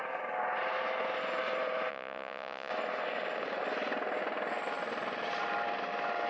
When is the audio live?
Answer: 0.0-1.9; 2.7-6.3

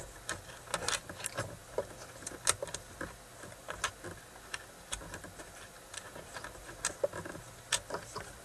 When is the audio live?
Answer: 0.0-8.4

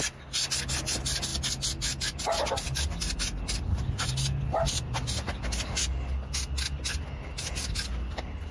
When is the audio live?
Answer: 0.0-8.5

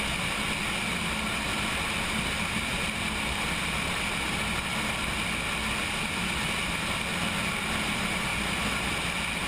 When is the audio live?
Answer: 0.0-9.5

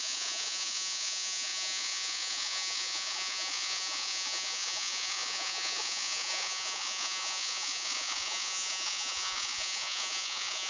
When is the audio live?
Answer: none

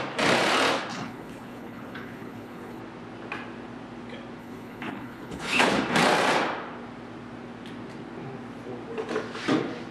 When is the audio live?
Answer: 0.0-0.9; 2.8-4.4; 5.7-9.9

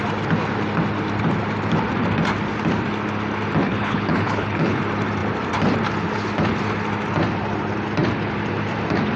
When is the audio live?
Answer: 0.0-3.6; 4.8-9.2

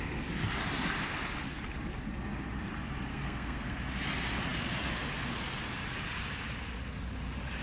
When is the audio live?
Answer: 0.0-3.1; 3.8-7.6